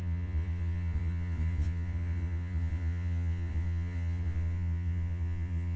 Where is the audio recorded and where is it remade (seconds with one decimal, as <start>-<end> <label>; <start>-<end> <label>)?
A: 0.0-5.8 remade